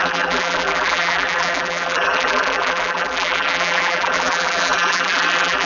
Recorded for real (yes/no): no